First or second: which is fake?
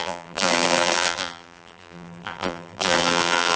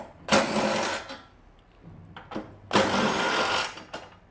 first